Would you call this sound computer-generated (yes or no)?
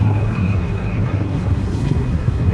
yes